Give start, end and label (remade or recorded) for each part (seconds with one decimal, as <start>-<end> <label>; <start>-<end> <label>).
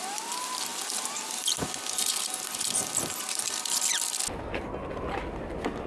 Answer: 0.0-5.9 recorded